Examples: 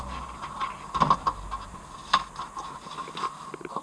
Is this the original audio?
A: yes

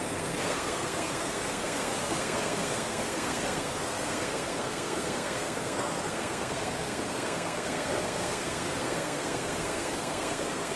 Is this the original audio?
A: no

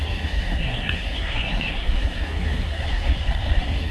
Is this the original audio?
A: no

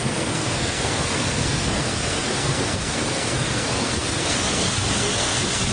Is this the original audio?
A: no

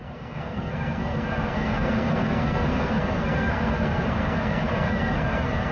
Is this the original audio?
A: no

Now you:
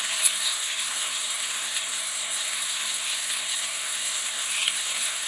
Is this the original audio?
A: no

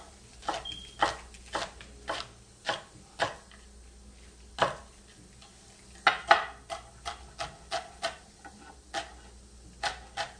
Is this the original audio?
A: yes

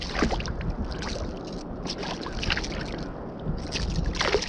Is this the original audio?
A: yes